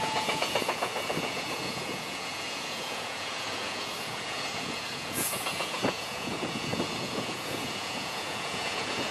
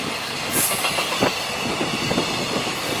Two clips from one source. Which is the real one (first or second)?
second